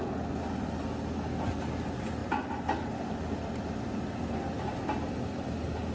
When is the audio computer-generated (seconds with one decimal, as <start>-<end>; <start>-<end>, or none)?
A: none